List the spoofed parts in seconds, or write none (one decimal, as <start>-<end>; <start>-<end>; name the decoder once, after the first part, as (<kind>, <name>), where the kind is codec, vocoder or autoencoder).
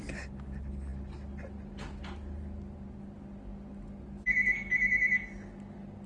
none